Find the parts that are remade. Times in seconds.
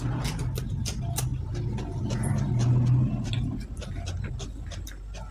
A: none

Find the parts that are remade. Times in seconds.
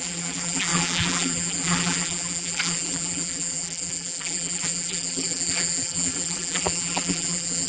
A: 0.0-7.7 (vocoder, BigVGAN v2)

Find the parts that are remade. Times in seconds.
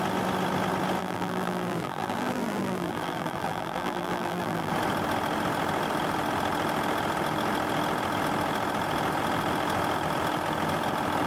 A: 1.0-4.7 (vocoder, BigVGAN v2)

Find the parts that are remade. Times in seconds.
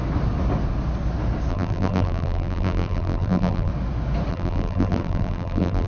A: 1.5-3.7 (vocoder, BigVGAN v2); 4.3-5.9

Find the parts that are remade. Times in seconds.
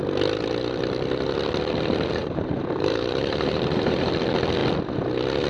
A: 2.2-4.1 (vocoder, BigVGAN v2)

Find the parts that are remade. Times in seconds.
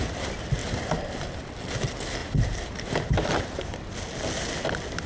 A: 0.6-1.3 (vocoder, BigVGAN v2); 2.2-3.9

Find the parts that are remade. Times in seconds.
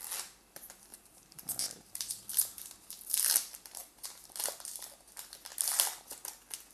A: 0.9-2.3 (vocoder, BigVGAN v2); 3.8-4.4